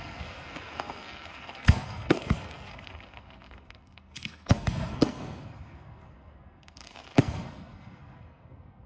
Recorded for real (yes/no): no